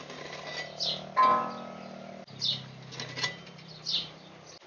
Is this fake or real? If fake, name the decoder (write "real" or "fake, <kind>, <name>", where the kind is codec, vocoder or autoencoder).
real